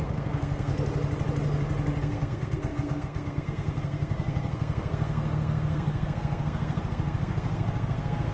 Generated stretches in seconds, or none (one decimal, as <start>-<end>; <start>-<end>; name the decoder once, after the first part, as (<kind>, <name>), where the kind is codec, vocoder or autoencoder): 0.0-0.7 (codec, SNAC); 2.0-8.3